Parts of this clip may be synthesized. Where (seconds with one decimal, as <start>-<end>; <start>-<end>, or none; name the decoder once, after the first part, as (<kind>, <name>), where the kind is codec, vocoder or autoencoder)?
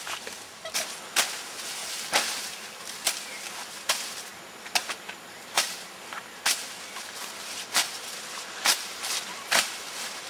0.0-1.8 (vocoder, BigVGAN v2); 3.2-4.3; 9.2-10.3